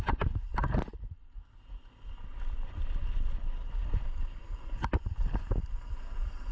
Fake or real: real